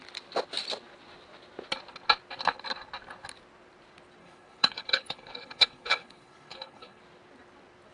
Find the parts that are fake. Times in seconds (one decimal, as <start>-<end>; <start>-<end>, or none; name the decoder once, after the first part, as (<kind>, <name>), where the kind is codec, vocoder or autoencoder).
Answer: 4.2-7.0 (codec, HILCodec)